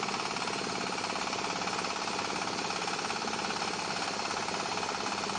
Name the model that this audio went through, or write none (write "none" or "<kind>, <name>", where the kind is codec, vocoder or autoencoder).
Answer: none